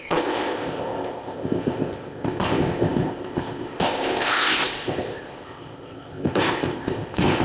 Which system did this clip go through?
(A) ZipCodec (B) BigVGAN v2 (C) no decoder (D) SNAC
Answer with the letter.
A